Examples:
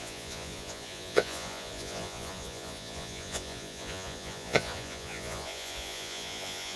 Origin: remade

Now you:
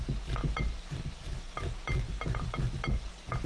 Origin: recorded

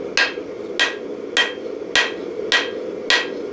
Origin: recorded